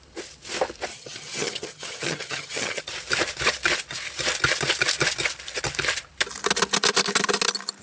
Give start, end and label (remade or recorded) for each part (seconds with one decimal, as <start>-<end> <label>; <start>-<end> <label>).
0.0-0.9 recorded; 0.9-2.8 remade; 2.8-7.8 recorded